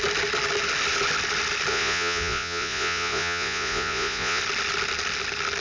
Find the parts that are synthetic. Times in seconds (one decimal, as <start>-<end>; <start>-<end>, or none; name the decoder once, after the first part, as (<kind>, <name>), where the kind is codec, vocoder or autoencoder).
1.7-4.4 (vocoder, Vocos)